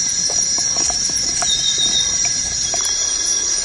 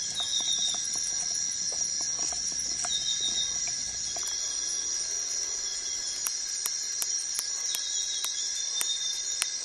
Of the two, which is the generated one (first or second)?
first